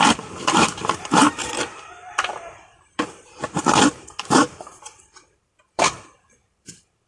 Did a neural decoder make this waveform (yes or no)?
yes